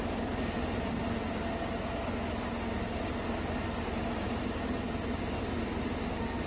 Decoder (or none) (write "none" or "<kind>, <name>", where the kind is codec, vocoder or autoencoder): none